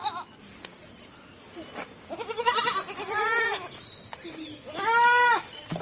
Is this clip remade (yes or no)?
no